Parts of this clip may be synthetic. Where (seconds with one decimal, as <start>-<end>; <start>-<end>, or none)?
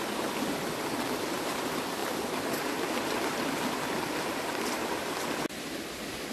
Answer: none